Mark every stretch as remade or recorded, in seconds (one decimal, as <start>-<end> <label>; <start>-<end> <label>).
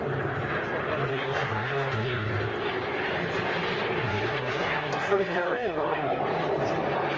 0.0-1.1 recorded; 1.1-2.3 remade; 2.3-4.0 recorded; 4.0-6.2 remade; 6.2-7.2 recorded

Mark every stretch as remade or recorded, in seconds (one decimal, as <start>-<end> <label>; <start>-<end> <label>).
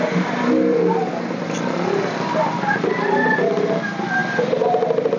0.0-5.2 recorded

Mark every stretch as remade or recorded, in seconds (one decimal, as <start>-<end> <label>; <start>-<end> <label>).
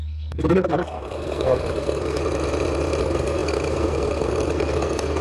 0.0-2.2 remade; 2.2-3.0 recorded; 3.0-5.2 remade